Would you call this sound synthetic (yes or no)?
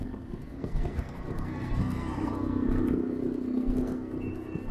yes